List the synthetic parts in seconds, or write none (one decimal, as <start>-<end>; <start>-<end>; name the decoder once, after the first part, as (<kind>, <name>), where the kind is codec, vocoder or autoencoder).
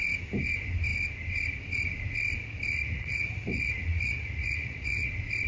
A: 2.7-5.1 (vocoder, Vocos)